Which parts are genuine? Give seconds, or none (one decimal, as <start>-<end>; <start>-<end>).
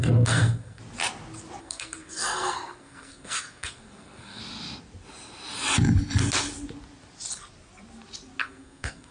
0.8-1.6; 4.4-8.4